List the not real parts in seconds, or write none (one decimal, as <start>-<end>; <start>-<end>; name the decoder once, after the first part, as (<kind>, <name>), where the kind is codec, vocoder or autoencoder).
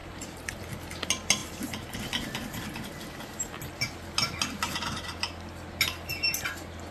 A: 0.0-0.6 (vocoder, BigVGAN v2); 1.4-2.9